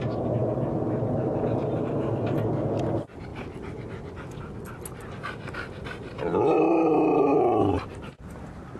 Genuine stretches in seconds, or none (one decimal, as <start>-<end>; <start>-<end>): 0.0-7.1; 8.1-8.8